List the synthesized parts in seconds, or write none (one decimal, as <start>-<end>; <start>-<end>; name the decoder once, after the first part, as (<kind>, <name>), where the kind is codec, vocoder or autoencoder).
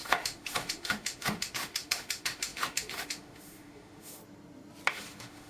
0.0-4.2 (autoencoder, DAC-VAE); 4.9-5.5